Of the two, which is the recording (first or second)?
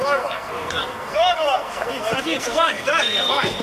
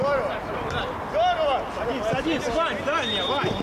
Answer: second